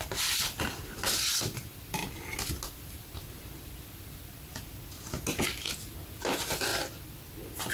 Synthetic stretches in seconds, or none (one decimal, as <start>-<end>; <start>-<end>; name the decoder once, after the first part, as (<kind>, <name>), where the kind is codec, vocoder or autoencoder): none